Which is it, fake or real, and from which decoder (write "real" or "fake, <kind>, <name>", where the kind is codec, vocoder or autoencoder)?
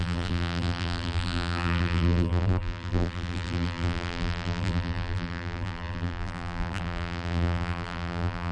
fake, vocoder, BigVGAN v2